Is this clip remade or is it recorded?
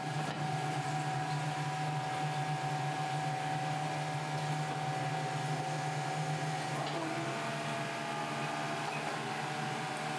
recorded